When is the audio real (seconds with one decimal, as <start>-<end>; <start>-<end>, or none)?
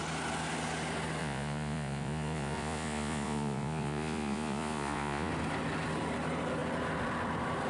0.0-1.2; 5.3-7.7